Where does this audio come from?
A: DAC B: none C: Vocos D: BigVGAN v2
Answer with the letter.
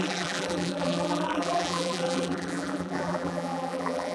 D